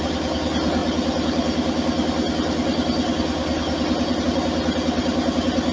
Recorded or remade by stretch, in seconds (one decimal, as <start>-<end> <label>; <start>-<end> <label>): 0.0-5.7 recorded